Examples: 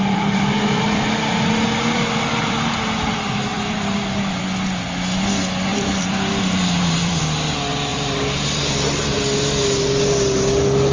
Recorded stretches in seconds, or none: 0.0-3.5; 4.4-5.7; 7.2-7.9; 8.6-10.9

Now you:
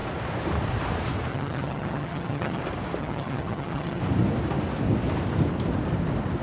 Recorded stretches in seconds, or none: 0.0-1.3; 2.6-3.0; 4.0-6.4